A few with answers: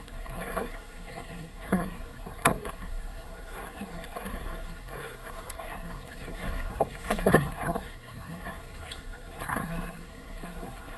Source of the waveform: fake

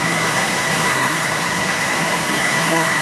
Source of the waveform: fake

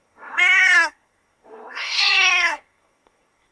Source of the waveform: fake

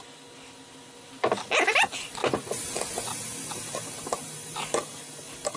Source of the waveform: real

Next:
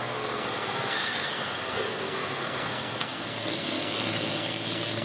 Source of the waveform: fake